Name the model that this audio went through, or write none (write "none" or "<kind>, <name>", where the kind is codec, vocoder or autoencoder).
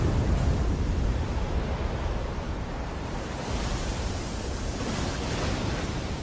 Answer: vocoder, BigVGAN v2